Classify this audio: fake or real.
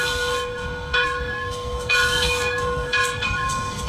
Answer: fake